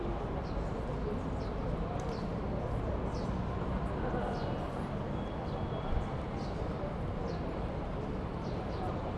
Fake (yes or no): no